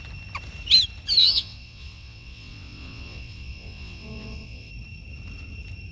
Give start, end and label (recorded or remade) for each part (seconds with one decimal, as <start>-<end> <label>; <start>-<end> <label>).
0.0-1.2 recorded; 1.2-4.7 remade; 4.7-5.9 recorded